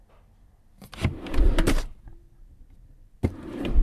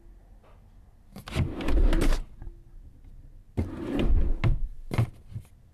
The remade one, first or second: first